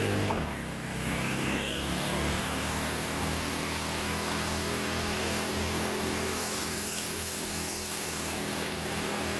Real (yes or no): no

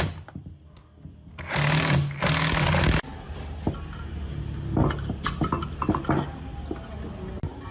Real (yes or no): yes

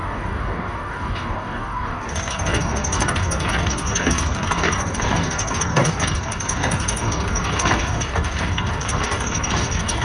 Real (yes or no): no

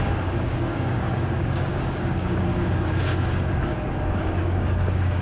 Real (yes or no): no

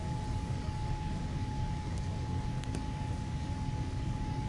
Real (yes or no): no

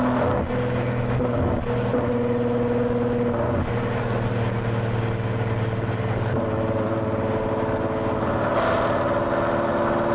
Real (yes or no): yes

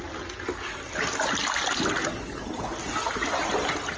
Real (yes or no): yes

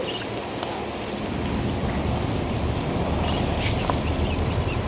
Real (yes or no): yes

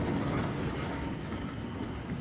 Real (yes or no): yes